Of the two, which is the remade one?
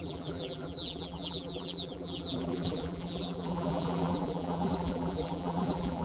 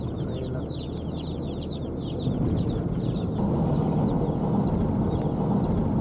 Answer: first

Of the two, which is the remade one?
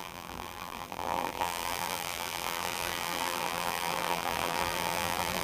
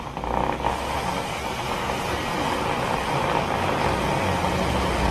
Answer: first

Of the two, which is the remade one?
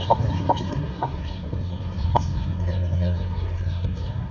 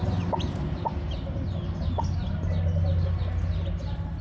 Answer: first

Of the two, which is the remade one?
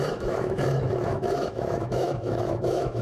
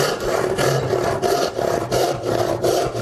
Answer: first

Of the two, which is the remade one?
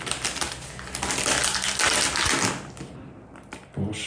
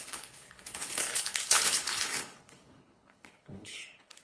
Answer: second